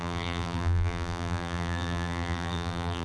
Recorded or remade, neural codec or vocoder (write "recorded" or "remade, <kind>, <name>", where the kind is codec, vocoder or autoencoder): remade, vocoder, BigVGAN v2